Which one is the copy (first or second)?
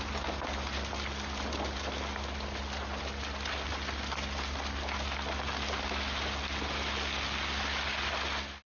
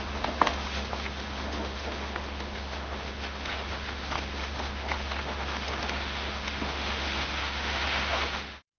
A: second